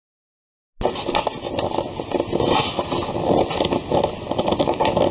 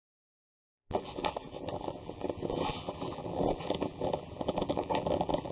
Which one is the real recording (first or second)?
first